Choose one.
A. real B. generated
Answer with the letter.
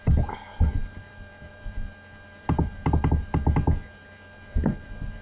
B